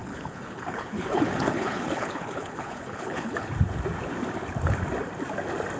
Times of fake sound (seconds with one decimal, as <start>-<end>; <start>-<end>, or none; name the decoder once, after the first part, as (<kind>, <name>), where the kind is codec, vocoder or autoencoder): 0.0-3.5 (codec, HILCodec)